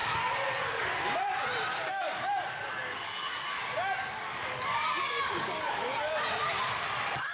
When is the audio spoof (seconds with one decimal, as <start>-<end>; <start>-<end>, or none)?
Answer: 0.0-0.8; 1.7-6.1